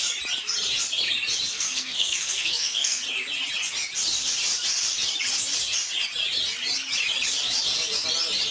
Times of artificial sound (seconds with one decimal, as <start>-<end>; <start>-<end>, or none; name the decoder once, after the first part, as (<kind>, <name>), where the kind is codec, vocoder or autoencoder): 1.5-3.0 (codec, SNAC)